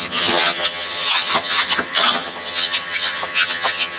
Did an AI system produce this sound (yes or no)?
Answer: yes